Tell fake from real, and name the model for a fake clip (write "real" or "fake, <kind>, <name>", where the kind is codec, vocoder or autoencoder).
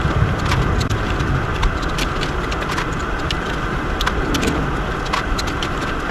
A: real